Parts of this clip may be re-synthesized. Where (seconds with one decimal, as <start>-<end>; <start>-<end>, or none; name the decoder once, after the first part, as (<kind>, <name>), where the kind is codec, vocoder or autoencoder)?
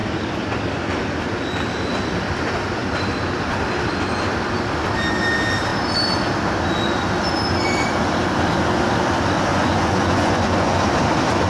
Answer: 9.5-10.8 (vocoder, Vocos)